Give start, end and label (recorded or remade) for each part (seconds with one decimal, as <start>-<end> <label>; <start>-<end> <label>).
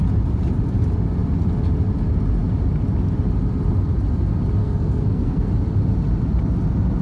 0.0-4.6 recorded; 4.6-5.5 remade; 5.5-7.0 recorded